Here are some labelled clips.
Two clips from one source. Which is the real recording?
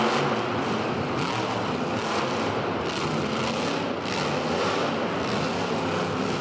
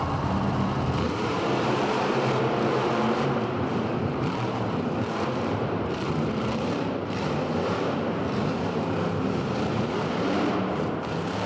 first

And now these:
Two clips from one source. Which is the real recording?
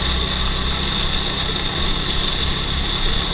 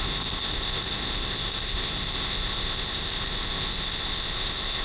first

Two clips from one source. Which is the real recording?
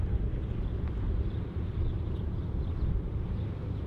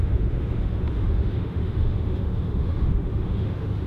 first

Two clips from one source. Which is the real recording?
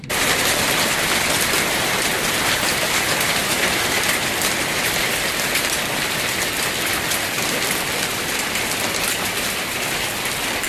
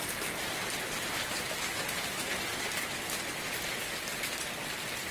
second